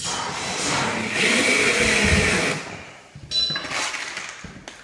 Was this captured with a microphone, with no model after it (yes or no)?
yes